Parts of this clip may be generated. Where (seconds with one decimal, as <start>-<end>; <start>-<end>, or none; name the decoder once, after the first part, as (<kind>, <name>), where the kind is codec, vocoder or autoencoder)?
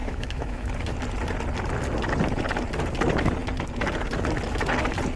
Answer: 0.0-0.7 (autoencoder, DAC-VAE)